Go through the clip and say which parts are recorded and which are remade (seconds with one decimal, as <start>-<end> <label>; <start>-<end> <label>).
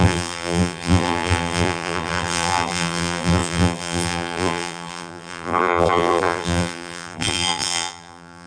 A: 0.0-8.5 remade